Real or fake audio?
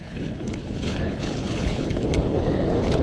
fake